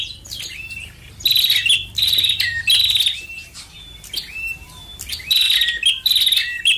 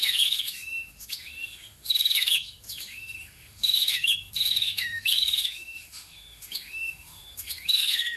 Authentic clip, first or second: first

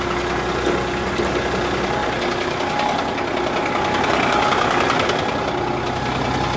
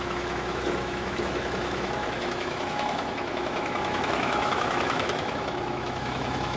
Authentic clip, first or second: first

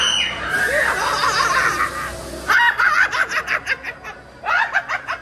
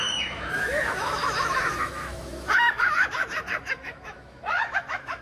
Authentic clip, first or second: first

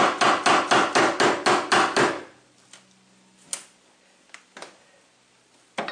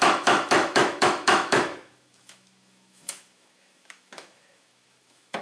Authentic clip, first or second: first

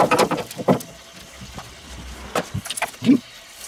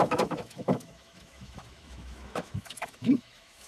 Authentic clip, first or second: first